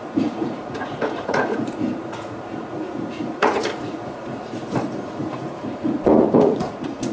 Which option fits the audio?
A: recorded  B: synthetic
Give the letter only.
B